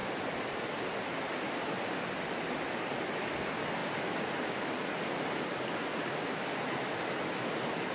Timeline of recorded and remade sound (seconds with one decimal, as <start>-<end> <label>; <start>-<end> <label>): 0.0-7.9 recorded